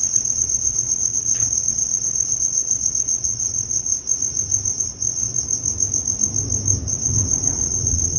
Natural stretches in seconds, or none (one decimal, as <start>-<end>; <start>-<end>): 3.9-4.8; 5.3-6.9